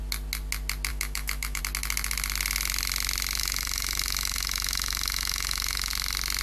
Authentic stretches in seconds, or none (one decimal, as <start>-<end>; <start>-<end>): 0.0-0.9; 1.6-3.4; 5.9-6.4